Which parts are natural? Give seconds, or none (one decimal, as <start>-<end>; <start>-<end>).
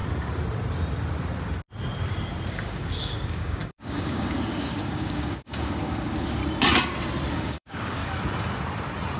0.0-2.5; 6.4-7.3; 8.0-9.2